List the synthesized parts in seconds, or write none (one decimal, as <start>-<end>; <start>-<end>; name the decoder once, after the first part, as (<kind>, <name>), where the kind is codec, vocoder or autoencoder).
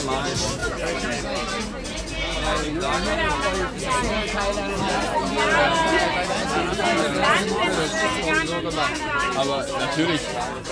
none